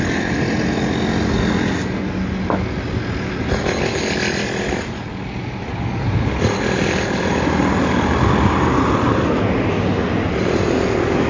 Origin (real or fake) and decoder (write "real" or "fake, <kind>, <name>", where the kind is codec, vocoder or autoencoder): real